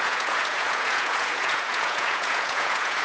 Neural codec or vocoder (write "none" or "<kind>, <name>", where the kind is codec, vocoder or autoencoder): vocoder, Vocos